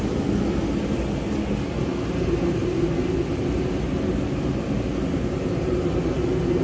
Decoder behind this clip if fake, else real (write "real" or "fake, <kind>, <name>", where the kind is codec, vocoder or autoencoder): real